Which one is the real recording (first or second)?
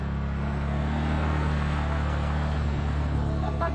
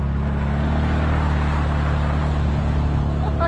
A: second